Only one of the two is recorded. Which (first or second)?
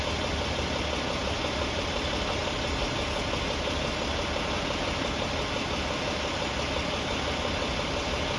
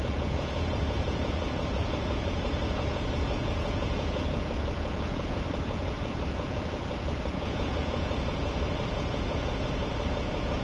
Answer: first